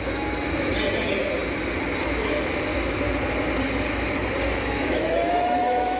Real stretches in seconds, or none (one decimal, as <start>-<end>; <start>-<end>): 0.7-2.0; 2.7-4.6